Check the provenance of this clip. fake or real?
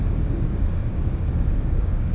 fake